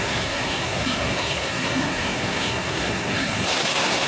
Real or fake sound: fake